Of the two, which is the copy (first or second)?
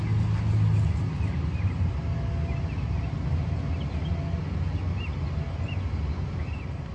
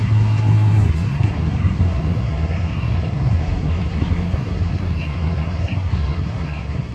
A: second